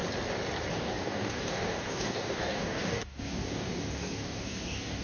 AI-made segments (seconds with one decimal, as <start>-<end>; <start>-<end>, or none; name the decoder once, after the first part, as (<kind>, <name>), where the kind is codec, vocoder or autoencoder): 0.7-5.0 (codec, DAC)